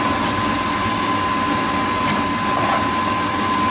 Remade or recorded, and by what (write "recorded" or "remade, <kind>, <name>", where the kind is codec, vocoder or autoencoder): recorded